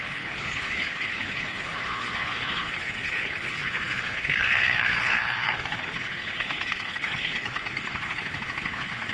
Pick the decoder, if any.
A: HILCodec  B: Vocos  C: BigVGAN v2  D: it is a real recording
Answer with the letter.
A